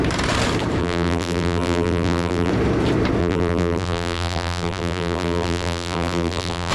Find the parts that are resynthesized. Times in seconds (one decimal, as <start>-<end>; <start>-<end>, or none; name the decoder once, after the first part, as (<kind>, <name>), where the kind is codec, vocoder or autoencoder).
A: 0.8-2.5 (vocoder, BigVGAN v2); 3.2-6.7

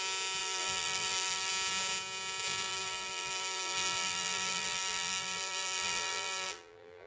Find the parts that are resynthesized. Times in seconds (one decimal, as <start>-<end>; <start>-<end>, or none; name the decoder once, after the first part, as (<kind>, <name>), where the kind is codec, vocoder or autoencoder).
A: 0.4-1.5 (vocoder, BigVGAN v2); 2.7-7.1

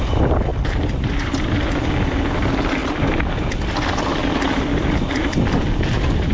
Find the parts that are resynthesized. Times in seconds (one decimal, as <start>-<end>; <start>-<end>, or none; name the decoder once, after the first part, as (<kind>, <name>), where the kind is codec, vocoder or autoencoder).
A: 2.8-3.5 (vocoder, BigVGAN v2); 4.2-5.6